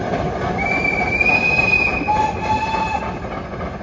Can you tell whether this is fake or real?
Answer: real